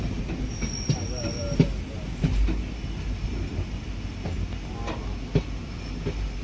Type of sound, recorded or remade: recorded